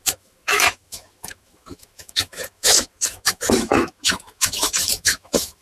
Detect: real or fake fake